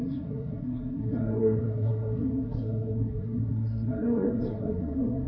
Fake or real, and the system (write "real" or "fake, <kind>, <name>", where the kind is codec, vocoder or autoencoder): fake, codec, SNAC